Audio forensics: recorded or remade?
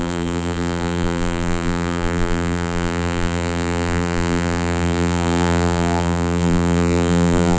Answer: remade